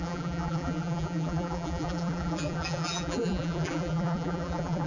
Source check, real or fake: fake